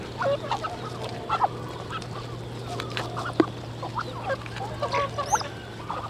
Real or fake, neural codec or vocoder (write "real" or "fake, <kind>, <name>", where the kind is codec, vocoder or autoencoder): real